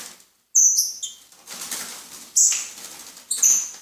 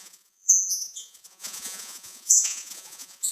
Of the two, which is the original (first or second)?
first